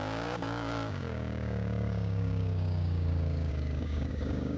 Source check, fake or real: fake